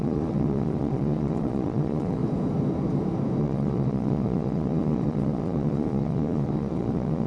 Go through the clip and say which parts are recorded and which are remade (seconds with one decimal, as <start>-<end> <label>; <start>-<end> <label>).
0.0-2.2 remade; 2.2-3.4 recorded; 3.4-7.3 remade